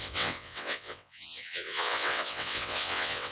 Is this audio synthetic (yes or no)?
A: yes